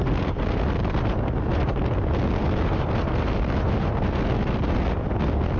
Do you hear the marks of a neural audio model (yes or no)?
no